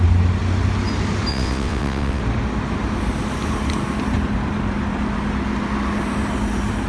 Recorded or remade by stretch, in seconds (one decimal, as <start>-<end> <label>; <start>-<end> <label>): 0.0-1.3 recorded; 1.3-2.2 remade; 2.2-6.9 recorded